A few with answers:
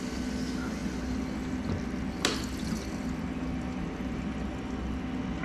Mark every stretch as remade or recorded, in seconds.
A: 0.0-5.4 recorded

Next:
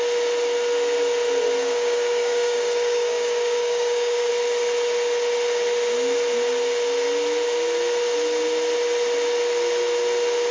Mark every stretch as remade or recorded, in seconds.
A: 0.0-1.6 recorded; 1.6-4.3 remade; 4.3-10.5 recorded

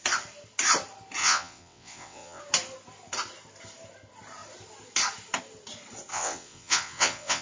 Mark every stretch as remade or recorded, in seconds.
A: 0.0-1.2 recorded; 1.2-2.4 remade; 2.4-6.1 recorded; 6.1-7.4 remade

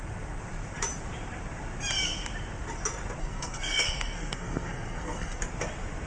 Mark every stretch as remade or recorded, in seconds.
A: 0.0-3.2 recorded; 3.2-5.4 remade; 5.4-6.1 recorded

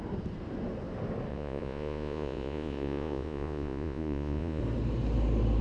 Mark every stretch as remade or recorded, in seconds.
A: 0.0-1.3 recorded; 1.3-4.6 remade; 4.6-5.6 recorded

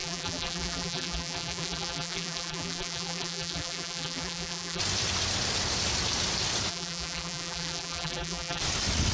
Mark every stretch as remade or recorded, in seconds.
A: 0.0-4.8 remade; 4.8-6.7 recorded; 6.7-8.6 remade; 8.6-9.1 recorded